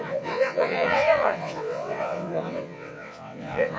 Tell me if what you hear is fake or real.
fake